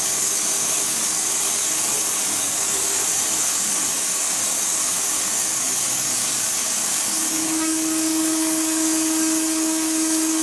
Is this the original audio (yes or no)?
no